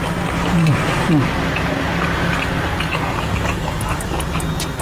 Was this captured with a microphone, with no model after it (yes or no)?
yes